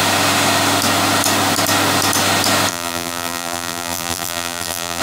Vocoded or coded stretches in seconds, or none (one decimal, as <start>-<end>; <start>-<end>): 2.7-5.0